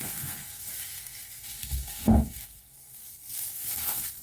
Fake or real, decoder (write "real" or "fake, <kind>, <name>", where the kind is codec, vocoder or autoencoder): fake, codec, SNAC